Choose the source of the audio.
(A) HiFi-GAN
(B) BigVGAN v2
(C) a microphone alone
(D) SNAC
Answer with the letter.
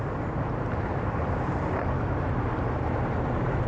B